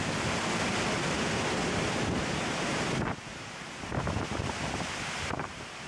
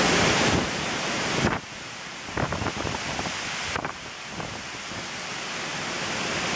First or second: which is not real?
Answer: second